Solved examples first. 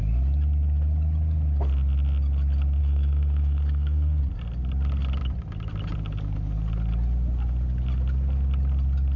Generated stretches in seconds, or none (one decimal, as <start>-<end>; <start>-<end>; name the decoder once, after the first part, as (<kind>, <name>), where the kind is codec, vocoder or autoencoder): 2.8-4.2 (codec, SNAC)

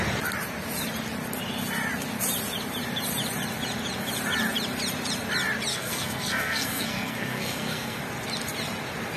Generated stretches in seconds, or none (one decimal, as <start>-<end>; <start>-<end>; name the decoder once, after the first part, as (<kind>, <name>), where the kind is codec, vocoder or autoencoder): 5.7-8.0 (codec, SNAC)

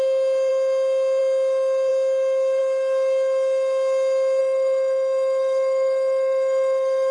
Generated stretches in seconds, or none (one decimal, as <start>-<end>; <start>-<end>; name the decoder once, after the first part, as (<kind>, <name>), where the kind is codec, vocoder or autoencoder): 4.4-7.1 (codec, SNAC)

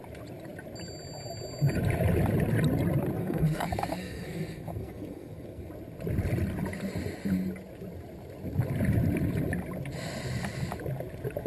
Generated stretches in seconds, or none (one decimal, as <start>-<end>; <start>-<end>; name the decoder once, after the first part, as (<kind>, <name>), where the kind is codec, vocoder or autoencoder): 3.2-5.7 (codec, SNAC)

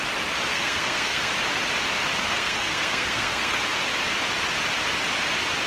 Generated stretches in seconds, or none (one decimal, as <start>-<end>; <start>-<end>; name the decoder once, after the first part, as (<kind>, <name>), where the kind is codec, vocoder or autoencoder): 0.5-1.3 (codec, SNAC); 2.1-3.6